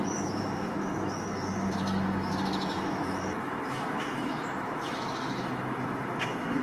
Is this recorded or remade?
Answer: remade